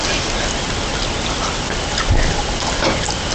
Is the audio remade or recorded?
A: recorded